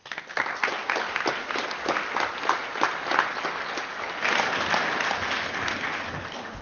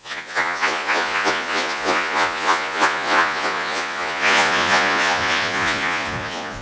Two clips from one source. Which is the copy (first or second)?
second